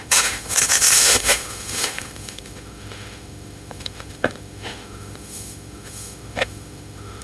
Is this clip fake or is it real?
fake